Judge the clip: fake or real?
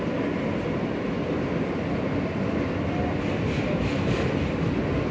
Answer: real